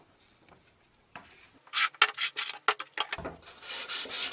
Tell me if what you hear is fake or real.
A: real